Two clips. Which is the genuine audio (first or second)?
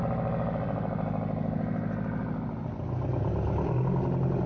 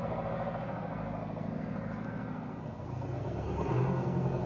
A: first